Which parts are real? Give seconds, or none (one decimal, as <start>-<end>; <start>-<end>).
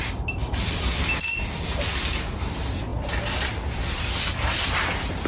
0.0-2.9; 3.5-5.3